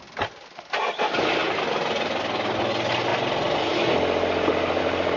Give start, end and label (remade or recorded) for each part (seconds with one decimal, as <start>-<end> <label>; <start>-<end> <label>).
0.0-5.2 recorded